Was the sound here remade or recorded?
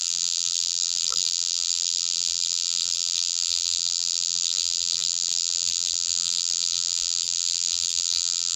remade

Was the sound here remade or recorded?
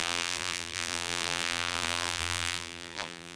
remade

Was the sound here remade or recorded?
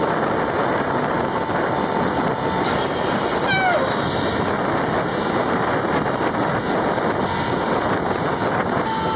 recorded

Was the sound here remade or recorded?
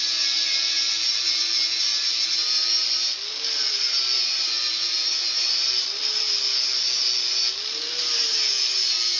recorded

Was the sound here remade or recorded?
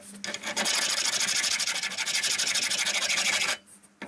recorded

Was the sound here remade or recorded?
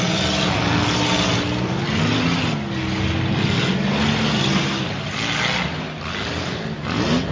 recorded